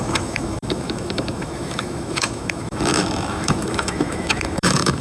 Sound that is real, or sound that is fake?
fake